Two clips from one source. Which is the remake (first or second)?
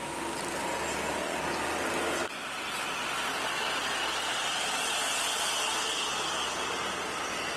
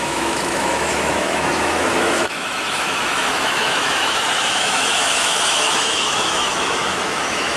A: second